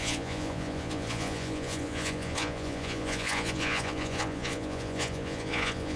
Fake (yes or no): yes